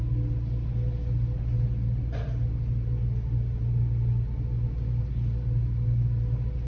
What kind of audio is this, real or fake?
real